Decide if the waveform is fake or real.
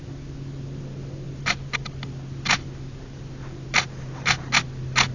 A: real